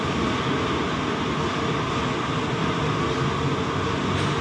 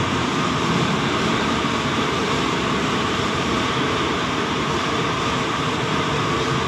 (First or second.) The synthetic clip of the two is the second